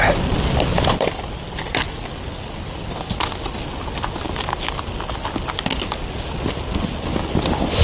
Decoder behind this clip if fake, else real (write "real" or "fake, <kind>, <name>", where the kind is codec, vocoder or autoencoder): real